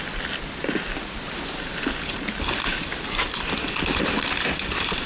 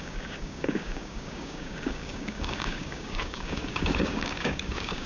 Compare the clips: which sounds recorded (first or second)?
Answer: first